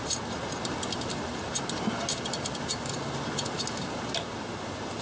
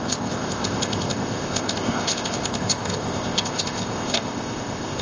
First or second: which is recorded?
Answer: first